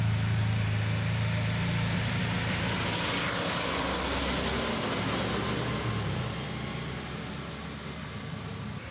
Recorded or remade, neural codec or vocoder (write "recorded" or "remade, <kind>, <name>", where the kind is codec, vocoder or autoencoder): recorded